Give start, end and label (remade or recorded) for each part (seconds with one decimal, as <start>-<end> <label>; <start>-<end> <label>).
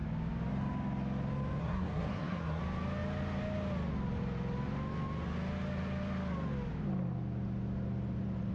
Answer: 0.0-1.6 recorded; 1.6-2.6 remade; 2.6-8.5 recorded